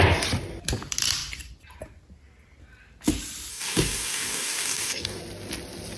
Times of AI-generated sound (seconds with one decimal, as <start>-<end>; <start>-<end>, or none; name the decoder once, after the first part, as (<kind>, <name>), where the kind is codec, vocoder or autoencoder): 3.5-5.2 (codec, DAC)